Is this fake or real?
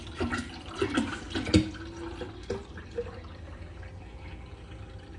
real